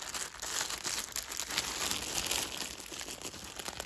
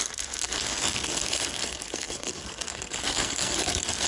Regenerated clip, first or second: second